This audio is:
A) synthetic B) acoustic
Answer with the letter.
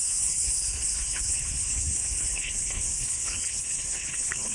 A